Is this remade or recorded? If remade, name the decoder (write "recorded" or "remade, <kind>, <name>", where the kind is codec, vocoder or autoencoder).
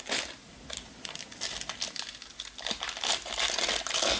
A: recorded